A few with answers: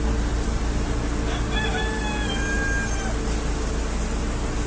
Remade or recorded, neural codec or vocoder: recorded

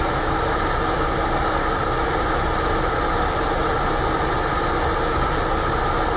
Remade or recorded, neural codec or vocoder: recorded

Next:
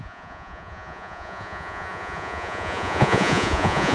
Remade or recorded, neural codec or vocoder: remade, vocoder, Vocos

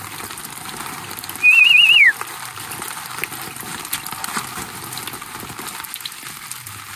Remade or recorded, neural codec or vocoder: recorded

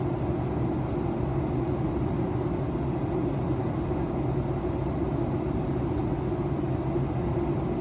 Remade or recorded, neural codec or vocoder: recorded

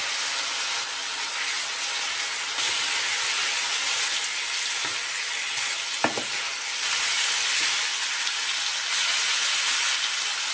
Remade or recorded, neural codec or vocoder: recorded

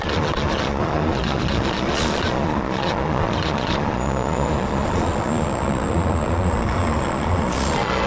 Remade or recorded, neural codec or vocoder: remade, vocoder, Vocos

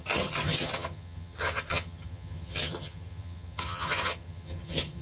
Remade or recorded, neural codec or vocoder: remade, vocoder, HiFi-GAN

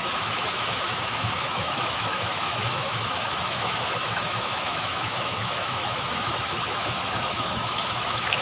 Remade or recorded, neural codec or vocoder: remade, autoencoder, DAC-VAE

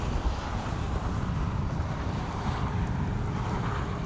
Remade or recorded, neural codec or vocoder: remade, vocoder, BigVGAN v2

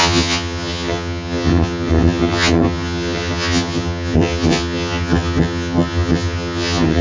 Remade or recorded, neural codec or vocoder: remade, vocoder, HiFi-GAN